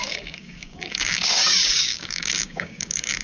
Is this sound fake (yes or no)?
yes